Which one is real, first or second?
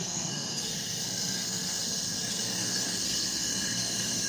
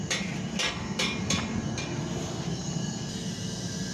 second